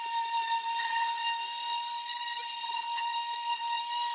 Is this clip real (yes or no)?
yes